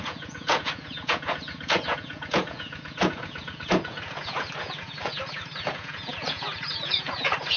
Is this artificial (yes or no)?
yes